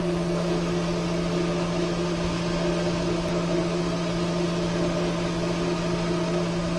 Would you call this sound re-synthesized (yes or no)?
no